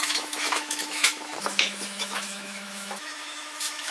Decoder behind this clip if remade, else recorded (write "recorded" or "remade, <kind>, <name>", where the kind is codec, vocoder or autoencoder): remade, autoencoder, DAC-VAE